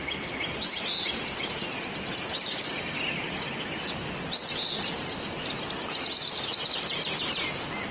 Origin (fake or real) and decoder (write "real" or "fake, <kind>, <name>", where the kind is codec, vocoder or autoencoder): real